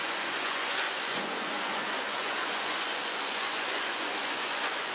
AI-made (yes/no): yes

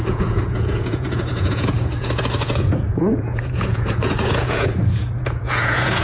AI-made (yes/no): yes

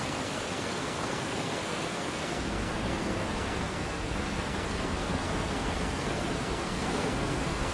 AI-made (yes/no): yes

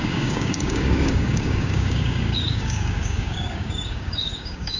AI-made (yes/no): yes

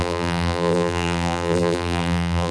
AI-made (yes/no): yes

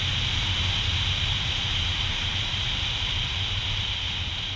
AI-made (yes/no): yes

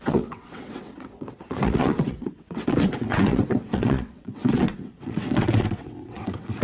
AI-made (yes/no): yes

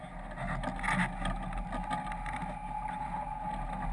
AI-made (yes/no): no